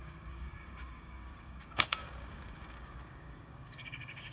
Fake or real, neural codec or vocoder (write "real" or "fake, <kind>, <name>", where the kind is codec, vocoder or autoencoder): fake, codec, DAC